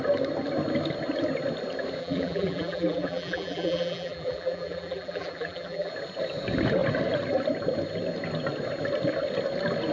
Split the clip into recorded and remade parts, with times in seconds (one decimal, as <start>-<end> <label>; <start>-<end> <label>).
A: 0.0-2.0 recorded; 2.0-5.9 remade; 5.9-9.9 recorded